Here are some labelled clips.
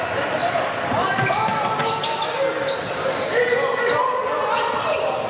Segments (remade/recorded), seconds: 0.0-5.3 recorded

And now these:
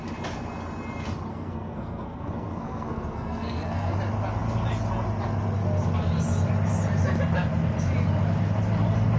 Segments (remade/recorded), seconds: 0.0-1.3 recorded; 1.3-3.9 remade; 3.9-9.2 recorded